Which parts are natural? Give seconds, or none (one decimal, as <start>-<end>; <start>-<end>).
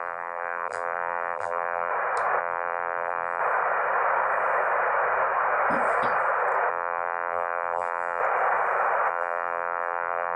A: 1.9-2.4; 3.4-6.7; 8.2-9.1